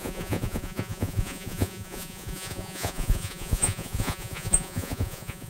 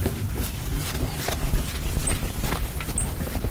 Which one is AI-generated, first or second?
first